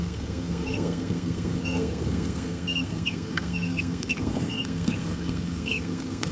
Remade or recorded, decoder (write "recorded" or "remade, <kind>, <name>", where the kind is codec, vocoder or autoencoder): remade, codec, SNAC